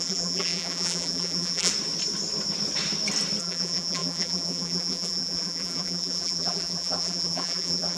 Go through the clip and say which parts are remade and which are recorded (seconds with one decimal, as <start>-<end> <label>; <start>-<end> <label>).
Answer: 0.0-1.7 remade; 1.7-3.4 recorded; 3.4-8.0 remade